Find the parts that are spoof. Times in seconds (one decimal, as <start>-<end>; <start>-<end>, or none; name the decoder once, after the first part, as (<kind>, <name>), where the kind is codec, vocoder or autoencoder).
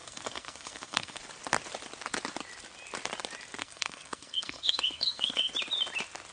0.0-1.2 (codec, SNAC); 3.6-5.5